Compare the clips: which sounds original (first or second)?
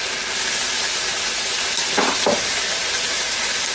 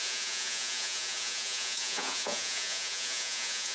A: first